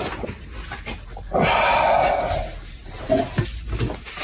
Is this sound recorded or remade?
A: recorded